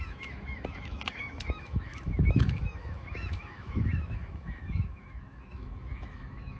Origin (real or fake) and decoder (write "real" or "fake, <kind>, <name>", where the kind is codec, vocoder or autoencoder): fake, autoencoder, DAC-VAE